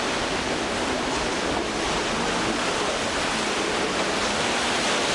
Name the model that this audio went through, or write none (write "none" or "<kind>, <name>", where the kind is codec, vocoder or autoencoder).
none